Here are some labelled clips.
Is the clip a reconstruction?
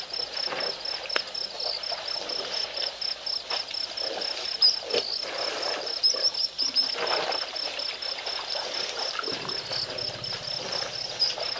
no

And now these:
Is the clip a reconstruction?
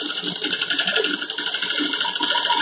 no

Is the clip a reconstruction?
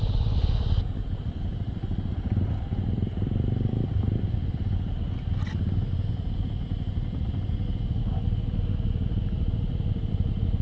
yes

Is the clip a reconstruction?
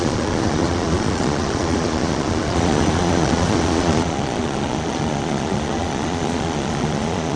yes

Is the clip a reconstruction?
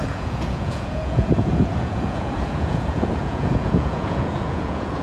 yes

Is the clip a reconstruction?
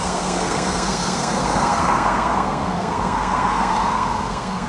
yes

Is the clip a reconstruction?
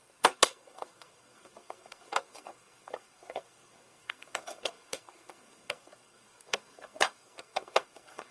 yes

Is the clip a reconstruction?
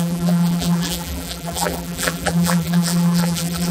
yes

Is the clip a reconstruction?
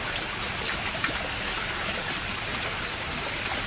no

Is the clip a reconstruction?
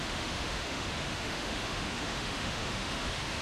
yes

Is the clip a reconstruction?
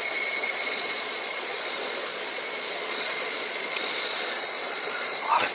yes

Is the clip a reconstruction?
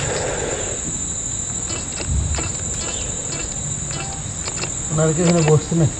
no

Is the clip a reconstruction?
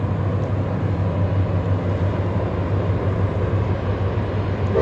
no